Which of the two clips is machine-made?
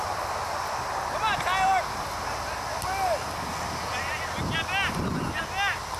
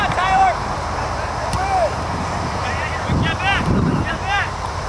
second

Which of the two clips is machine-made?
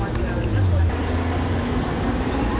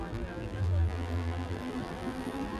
second